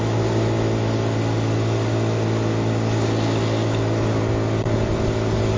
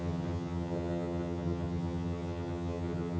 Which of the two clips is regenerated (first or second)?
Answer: second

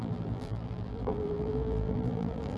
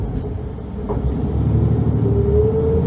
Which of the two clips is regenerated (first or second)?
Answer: first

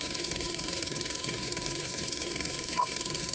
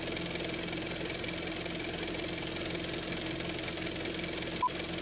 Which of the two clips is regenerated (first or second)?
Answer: first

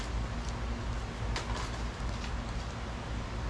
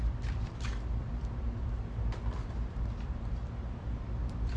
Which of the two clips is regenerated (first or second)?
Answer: second